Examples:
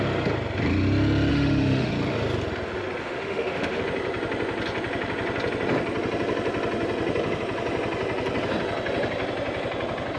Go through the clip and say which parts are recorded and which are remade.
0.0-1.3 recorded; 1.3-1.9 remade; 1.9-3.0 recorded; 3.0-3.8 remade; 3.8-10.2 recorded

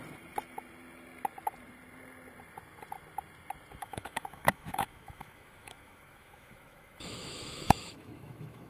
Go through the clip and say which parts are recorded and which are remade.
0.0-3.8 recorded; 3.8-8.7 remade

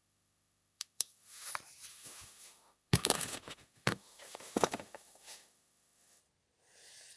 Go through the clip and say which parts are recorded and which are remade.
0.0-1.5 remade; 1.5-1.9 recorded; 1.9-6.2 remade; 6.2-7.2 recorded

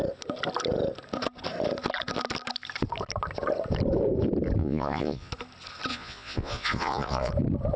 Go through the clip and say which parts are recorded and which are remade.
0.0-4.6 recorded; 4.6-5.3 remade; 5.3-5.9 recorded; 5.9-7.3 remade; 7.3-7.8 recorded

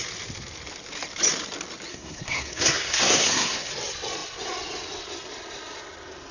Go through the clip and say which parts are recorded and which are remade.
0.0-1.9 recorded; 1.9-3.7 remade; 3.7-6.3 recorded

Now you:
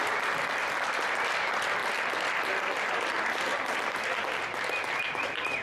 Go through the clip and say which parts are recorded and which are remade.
0.0-5.6 recorded